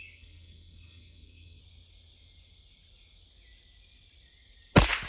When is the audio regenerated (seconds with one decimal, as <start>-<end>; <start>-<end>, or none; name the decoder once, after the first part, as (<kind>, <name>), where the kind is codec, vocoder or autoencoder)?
0.0-1.6 (codec, SNAC)